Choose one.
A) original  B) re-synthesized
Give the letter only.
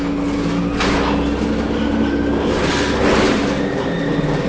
A